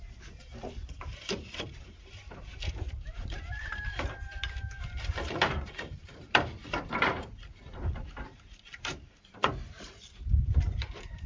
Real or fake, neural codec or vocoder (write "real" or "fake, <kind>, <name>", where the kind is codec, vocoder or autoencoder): fake, vocoder, BigVGAN v2